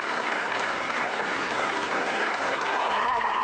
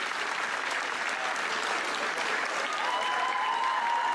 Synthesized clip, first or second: first